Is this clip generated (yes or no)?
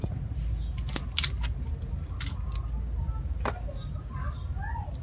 no